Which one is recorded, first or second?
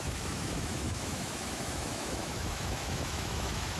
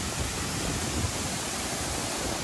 second